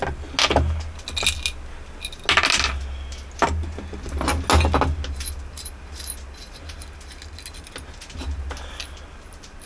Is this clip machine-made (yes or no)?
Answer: no